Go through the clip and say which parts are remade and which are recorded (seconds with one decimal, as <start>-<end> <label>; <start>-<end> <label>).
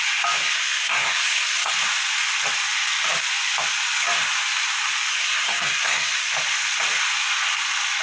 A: 0.0-0.4 recorded; 0.4-1.7 remade; 1.7-5.1 recorded; 5.1-6.3 remade; 6.3-8.0 recorded